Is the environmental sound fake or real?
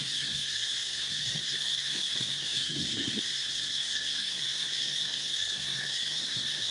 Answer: fake